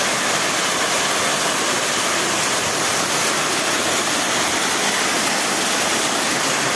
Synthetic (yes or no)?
no